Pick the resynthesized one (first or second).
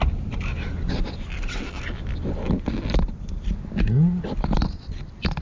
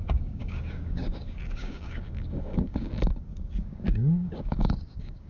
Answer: second